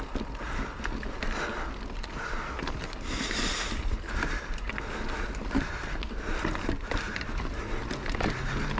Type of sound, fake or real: real